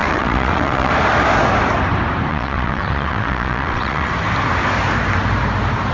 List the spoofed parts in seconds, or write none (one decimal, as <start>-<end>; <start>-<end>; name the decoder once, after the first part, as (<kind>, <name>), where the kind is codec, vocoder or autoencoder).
0.0-0.9 (vocoder, WaveNeXt); 2.3-4.1